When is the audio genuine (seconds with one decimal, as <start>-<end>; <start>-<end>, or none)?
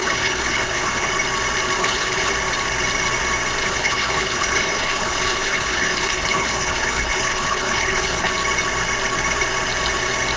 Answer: 1.1-1.8; 2.3-3.6; 8.3-10.4